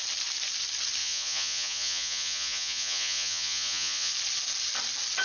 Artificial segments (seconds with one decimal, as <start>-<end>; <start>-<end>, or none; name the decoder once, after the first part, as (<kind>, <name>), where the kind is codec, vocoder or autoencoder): 1.0-4.1 (vocoder, Vocos)